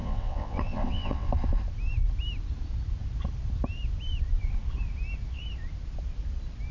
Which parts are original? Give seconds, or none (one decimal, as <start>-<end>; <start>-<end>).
1.3-6.7